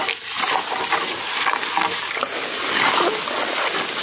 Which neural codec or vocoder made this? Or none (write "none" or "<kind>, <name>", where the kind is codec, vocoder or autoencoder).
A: none